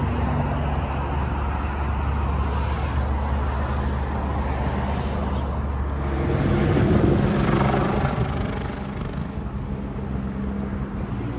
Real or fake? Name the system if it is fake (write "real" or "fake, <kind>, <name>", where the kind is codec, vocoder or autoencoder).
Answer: real